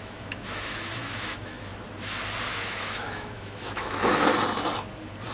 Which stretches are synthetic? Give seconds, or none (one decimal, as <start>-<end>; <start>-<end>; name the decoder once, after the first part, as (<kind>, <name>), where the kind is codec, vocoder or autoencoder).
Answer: 0.0-1.7 (autoencoder, DAC-VAE); 2.5-4.3